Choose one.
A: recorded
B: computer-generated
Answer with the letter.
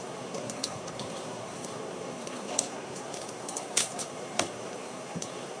B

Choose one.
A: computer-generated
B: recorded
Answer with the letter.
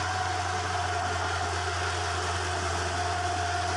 B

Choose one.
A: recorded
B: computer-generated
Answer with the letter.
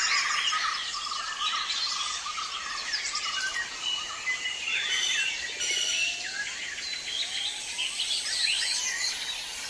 A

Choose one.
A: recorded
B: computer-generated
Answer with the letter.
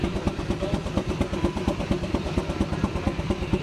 A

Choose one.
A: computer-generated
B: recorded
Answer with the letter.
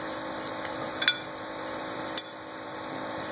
B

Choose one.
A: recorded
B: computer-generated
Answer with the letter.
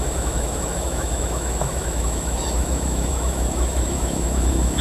B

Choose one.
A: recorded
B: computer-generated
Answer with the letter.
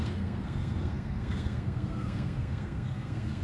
B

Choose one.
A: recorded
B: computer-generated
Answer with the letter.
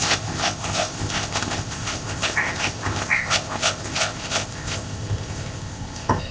B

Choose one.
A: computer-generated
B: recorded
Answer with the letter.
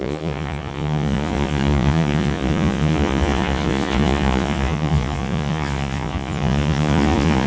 A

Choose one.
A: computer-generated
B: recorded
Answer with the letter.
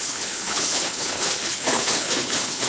A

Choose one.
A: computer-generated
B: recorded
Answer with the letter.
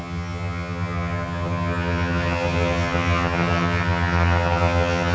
A